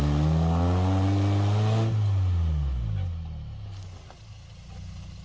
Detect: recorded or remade recorded